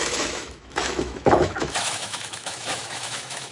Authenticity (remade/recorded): remade